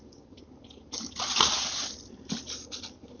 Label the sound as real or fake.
real